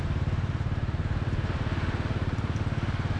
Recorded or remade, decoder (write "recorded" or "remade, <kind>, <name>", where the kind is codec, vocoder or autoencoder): recorded